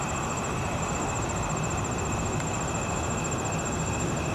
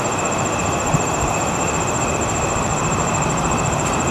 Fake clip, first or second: second